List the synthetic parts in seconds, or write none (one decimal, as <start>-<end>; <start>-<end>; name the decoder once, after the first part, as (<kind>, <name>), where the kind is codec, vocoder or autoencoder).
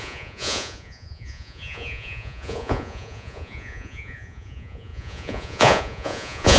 0.0-6.6 (vocoder, Vocos)